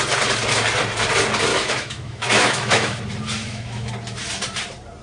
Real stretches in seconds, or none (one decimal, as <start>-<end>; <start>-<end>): 0.0-1.5; 3.0-3.4; 3.9-5.0